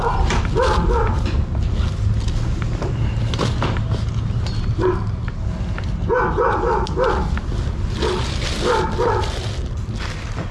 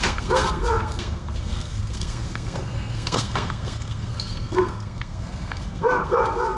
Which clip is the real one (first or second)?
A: first